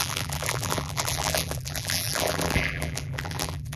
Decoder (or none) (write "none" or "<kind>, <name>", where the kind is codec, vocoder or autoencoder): vocoder, BigVGAN v2